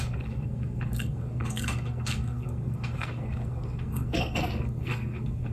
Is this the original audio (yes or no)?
no